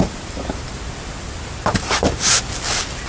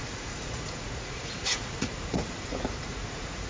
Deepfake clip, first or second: second